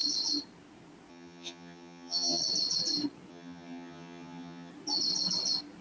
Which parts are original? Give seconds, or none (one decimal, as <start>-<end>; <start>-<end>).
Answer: 0.0-1.1; 2.4-3.3; 4.7-5.8

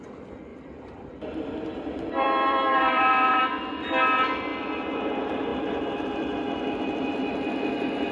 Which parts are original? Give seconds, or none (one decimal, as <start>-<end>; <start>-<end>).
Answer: 0.0-0.5; 3.3-5.5; 6.4-8.1

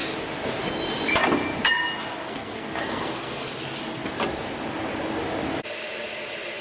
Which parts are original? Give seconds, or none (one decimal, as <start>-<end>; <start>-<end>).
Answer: 0.0-2.2; 3.5-6.6

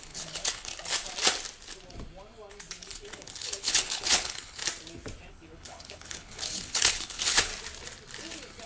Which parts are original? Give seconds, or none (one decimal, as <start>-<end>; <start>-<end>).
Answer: 0.7-2.8; 4.6-5.3; 7.5-8.7

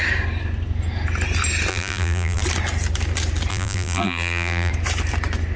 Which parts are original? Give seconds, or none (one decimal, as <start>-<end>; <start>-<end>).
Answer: 0.0-1.7; 2.4-3.5; 4.7-5.6

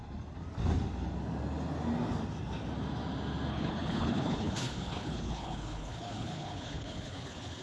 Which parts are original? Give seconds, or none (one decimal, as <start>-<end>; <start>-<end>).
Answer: 0.0-3.5